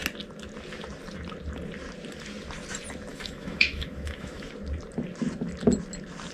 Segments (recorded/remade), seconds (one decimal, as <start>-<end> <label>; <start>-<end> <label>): 0.0-3.1 recorded; 3.1-4.5 remade; 4.5-6.3 recorded